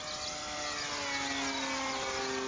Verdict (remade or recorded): recorded